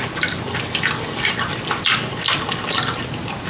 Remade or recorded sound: recorded